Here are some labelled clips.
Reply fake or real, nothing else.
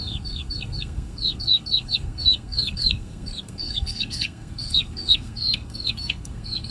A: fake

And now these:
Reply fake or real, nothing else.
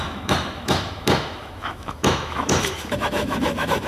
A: fake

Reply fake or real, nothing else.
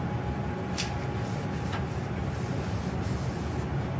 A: real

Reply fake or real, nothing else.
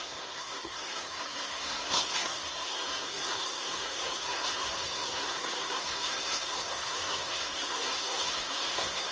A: fake